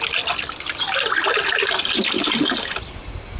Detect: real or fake real